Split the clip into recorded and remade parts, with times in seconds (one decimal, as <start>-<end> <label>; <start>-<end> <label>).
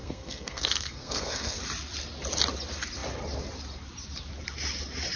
0.0-1.6 remade; 1.6-5.2 recorded